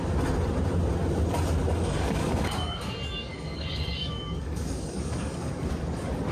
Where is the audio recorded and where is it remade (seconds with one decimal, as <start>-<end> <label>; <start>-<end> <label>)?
0.0-1.7 recorded; 1.7-5.5 remade; 5.5-6.3 recorded